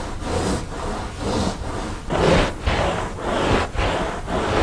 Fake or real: real